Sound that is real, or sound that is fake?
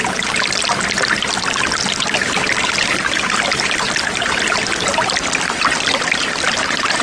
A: real